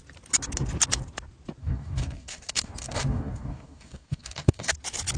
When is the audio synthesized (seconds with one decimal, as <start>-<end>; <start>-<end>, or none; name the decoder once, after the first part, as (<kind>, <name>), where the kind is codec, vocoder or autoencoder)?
1.6-4.7 (codec, DAC)